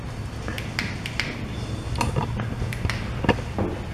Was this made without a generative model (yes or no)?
yes